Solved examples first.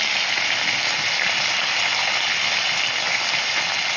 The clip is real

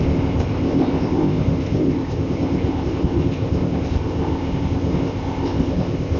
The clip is fake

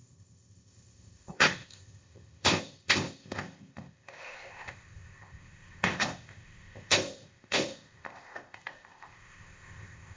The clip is fake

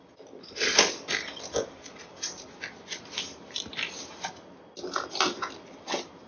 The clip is real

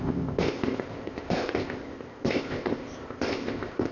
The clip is fake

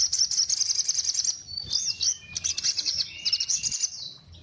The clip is real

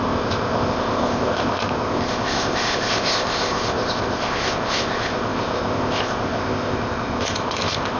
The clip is fake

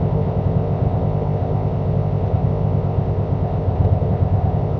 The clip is fake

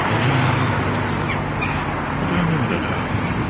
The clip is real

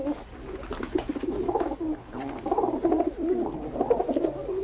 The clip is real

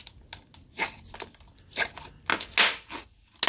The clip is real